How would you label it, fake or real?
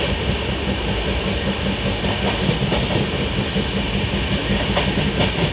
real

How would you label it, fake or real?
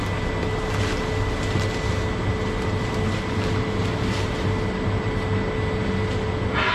real